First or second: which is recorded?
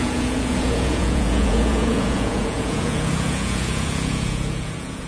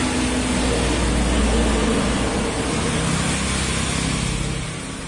second